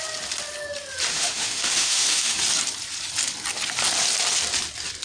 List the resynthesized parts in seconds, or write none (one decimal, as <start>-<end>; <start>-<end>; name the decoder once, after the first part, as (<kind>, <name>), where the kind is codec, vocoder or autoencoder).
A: 1.1-2.4 (autoencoder, DAC-VAE)